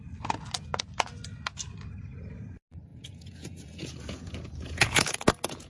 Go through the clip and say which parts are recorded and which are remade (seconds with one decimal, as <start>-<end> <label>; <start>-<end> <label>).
0.0-2.9 recorded; 2.9-5.7 remade